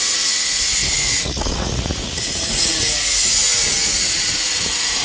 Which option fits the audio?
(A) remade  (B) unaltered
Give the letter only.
A